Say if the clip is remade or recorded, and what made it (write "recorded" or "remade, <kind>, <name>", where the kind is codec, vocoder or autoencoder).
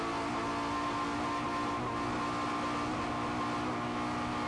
recorded